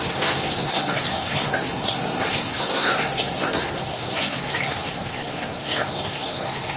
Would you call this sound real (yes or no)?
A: no